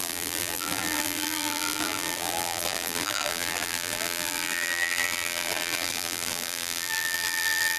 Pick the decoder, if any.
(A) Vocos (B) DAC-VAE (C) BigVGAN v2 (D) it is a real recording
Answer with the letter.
C